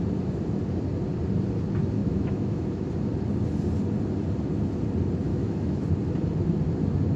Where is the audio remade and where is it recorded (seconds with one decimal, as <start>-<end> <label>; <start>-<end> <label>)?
0.0-2.0 recorded; 2.0-2.9 remade; 2.9-5.3 recorded; 5.3-5.9 remade; 5.9-7.2 recorded